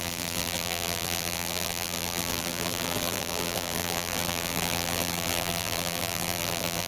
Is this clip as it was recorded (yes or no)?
no